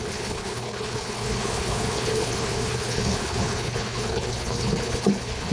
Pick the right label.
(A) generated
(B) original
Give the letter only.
A